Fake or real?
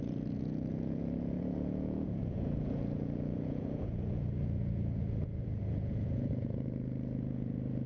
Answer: fake